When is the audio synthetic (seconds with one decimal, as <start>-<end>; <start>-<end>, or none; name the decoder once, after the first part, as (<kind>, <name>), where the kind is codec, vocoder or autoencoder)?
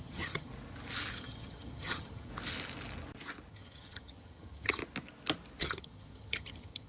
0.0-0.5 (vocoder, HiFi-GAN); 1.1-2.3; 3.5-4.8; 5.6-6.9